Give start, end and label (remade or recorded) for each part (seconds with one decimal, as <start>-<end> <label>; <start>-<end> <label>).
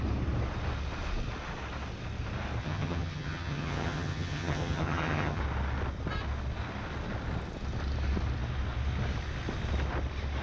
0.0-2.6 recorded; 2.6-5.4 remade; 5.4-10.4 recorded